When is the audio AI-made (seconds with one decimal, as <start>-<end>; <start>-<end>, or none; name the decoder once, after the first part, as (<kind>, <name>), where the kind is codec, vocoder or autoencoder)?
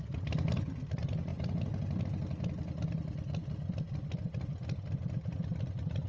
none